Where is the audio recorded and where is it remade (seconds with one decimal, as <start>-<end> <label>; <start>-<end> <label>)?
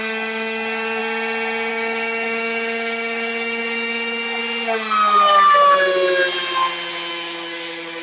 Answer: 0.0-1.0 remade; 1.0-1.7 recorded; 1.7-4.4 remade; 4.4-7.1 recorded; 7.1-8.0 remade